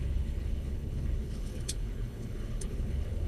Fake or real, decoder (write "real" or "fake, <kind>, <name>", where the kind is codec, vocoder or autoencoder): fake, codec, HILCodec